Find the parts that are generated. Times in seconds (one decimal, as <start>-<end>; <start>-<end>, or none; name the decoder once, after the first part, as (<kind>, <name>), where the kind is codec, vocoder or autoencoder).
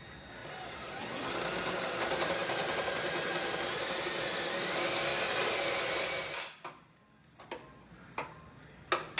none